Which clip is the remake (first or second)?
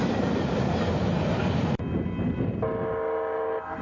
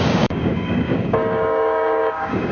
second